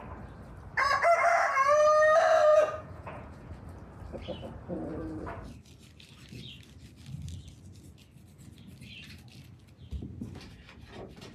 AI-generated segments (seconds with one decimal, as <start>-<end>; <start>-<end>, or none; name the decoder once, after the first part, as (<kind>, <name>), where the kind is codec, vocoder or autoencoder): 2.5-3.6 (vocoder, Vocos)